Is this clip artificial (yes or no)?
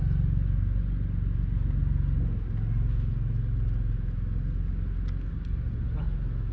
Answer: no